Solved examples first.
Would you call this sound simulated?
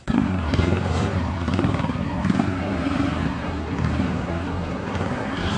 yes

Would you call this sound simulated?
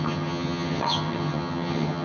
yes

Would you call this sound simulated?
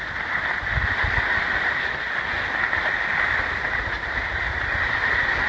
no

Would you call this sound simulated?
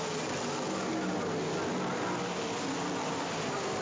no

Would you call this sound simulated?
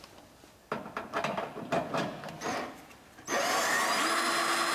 no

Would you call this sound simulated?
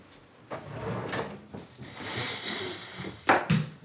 no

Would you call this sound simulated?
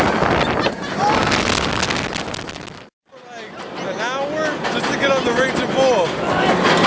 no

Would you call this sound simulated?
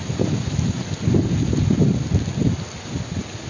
no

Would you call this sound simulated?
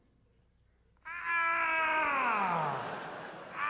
no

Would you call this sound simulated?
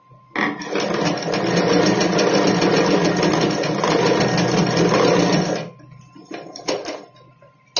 no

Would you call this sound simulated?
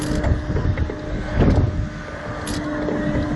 no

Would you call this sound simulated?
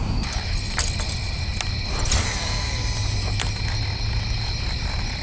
no